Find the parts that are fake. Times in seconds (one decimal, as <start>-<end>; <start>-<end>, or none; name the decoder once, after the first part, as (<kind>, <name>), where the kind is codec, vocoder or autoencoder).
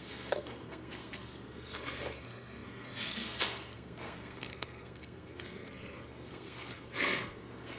0.0-7.8 (codec, SNAC)